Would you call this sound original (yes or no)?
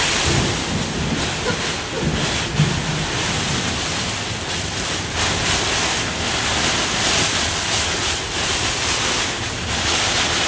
yes